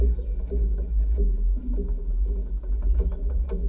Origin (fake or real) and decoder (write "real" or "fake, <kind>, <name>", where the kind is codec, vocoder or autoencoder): real